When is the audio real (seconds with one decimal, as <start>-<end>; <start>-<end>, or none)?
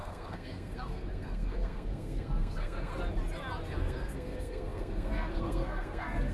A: 2.9-3.8